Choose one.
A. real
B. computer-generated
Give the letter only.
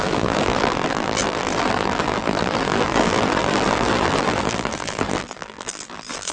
B